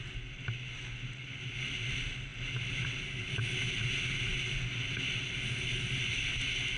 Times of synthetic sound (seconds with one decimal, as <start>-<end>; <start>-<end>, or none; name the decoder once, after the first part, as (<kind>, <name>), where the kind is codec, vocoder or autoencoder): none